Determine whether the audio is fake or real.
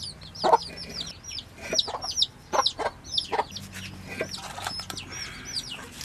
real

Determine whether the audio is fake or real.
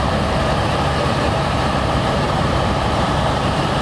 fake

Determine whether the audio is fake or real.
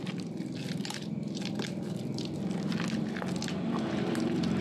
fake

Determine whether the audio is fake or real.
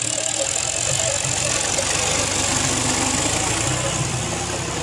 real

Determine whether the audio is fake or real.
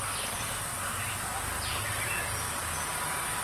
real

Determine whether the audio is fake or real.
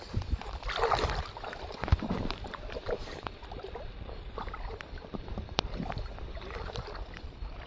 fake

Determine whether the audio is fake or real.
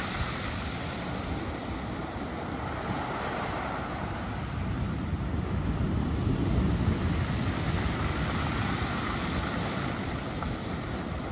real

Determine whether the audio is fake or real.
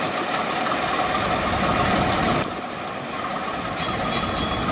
real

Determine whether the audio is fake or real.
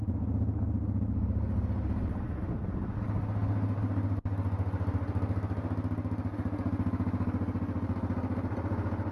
real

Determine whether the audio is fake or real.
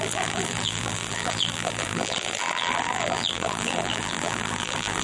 fake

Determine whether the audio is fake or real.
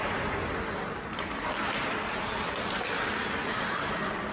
fake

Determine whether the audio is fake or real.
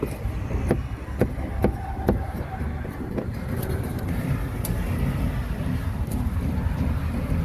real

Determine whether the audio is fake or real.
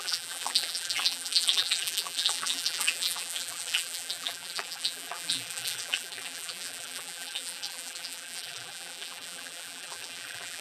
fake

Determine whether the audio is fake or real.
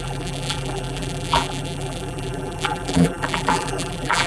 fake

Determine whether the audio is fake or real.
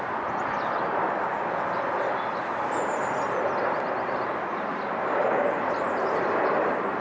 real